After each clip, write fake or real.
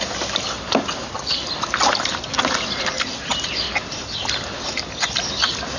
real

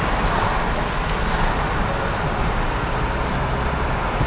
real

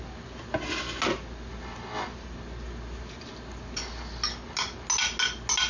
real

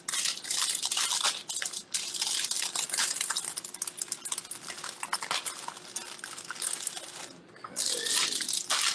real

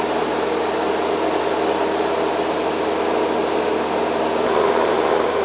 real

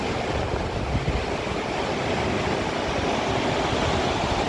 real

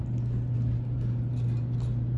real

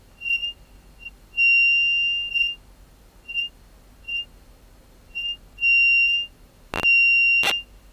real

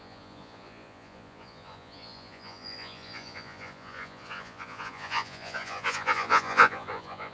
fake